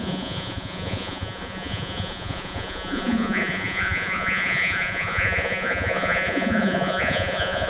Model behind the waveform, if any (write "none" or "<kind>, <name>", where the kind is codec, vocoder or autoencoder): vocoder, Vocos